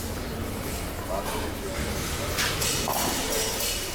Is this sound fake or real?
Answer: real